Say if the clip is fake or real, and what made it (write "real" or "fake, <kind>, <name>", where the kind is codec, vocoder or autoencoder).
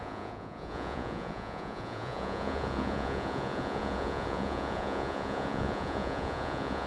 fake, vocoder, Vocos